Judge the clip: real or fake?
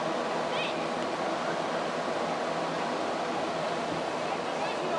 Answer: real